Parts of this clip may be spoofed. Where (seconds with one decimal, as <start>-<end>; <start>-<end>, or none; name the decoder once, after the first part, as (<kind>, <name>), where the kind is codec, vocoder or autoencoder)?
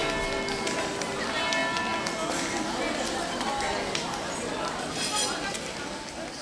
none